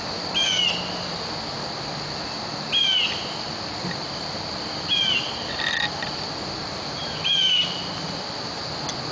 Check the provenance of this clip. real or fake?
real